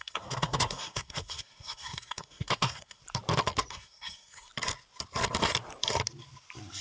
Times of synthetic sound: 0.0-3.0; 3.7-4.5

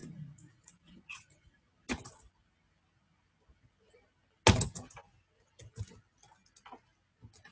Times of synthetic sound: 0.0-1.7

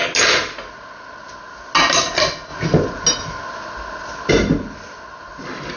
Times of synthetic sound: none